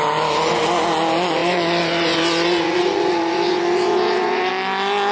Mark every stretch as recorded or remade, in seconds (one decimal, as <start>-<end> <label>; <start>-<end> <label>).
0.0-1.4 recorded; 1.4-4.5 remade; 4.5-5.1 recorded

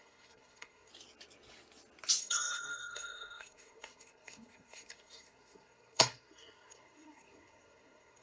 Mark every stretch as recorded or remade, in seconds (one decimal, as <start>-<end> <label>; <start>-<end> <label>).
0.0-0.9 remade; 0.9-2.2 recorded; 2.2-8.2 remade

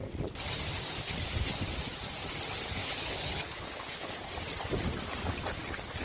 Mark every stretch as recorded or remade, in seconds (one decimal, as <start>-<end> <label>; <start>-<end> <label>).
0.0-2.8 recorded; 2.8-4.1 remade; 4.1-6.0 recorded

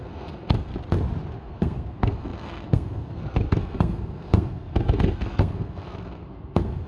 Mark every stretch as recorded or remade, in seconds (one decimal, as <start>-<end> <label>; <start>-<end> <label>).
0.0-0.7 remade; 0.7-1.4 recorded; 1.4-6.9 remade